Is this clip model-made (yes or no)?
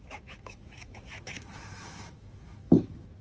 yes